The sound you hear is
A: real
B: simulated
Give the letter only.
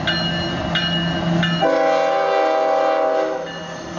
A